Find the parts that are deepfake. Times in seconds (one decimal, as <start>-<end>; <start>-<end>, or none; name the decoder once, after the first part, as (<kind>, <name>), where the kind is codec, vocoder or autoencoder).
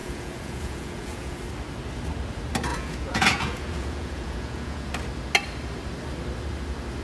0.0-1.4 (vocoder, Vocos); 2.7-4.9